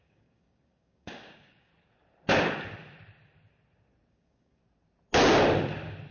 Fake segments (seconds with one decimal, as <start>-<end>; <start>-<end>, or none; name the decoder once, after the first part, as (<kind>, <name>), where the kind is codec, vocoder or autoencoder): 0.0-1.7 (codec, DAC); 4.1-4.6

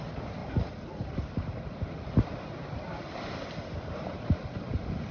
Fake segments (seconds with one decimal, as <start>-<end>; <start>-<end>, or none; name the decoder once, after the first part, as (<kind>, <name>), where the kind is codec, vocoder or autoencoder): none

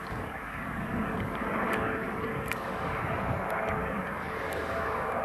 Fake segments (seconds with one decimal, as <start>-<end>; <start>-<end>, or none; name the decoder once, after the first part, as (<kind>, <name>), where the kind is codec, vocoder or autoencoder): 0.0-3.1 (codec, DAC); 3.8-5.2

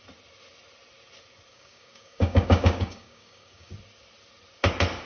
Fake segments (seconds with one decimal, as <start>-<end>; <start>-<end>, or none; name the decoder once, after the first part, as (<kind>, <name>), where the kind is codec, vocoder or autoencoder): 1.5-3.7 (codec, DAC)

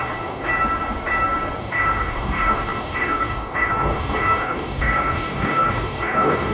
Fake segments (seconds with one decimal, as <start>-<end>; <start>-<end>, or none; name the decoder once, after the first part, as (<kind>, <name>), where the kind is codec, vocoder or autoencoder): 0.0-0.5 (codec, DAC); 1.6-6.5